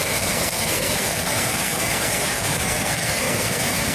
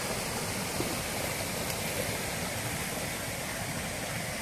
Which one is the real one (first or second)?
second